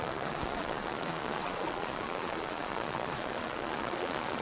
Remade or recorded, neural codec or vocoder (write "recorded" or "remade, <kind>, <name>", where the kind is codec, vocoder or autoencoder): remade, vocoder, Vocos